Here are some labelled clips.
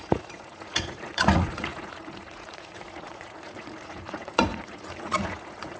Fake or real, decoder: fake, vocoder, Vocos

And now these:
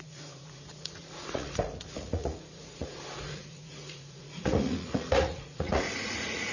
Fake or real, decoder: fake, vocoder, Vocos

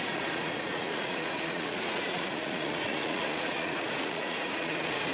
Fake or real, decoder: fake, vocoder, Vocos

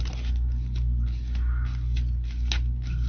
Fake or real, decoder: real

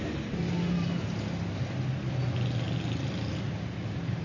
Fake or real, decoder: real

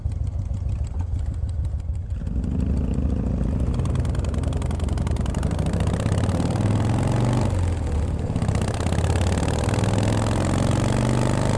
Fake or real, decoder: real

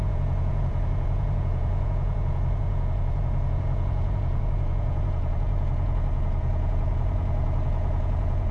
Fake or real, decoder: fake, vocoder, Vocos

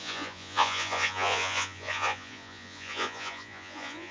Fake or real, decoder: fake, vocoder, Vocos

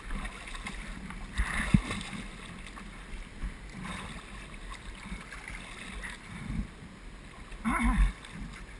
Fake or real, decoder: real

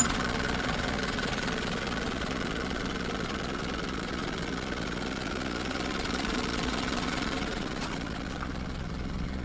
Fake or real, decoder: fake, vocoder, Vocos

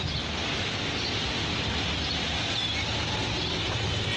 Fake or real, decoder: real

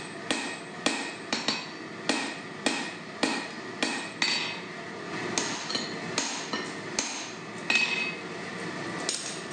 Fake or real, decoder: real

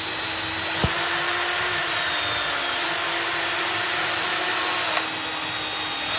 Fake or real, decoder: real